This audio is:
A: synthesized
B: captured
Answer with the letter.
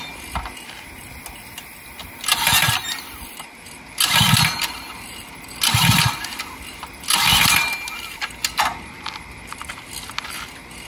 B